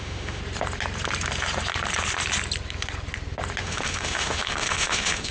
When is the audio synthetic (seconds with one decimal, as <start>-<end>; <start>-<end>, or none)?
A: 0.0-0.4; 3.6-5.3